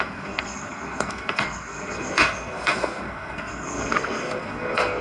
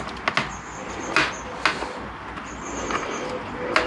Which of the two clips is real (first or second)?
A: second